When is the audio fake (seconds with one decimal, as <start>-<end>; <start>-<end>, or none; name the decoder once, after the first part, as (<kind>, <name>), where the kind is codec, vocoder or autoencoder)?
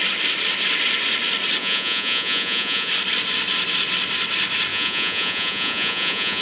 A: 1.6-2.9 (vocoder, Vocos); 4.7-6.4